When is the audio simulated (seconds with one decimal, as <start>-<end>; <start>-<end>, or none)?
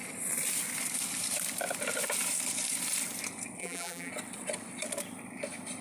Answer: 3.6-4.1